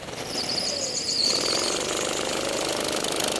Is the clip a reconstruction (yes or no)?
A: no